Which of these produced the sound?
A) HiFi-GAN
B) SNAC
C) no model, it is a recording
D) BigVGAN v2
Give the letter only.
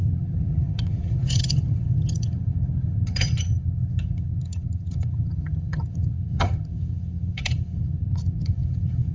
A